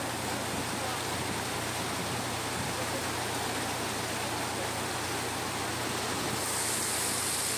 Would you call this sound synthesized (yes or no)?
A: no